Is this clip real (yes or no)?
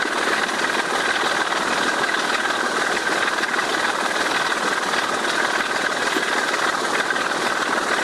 yes